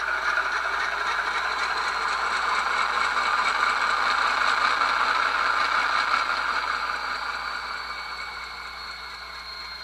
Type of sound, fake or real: real